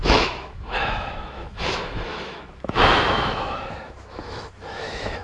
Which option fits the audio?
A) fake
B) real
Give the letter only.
A